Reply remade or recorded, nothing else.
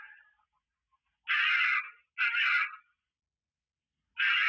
recorded